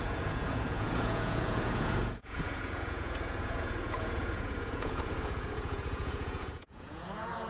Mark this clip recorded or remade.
remade